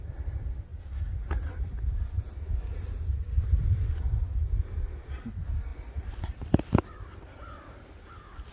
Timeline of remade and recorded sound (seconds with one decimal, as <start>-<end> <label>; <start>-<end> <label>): 0.0-5.7 recorded; 5.7-8.5 remade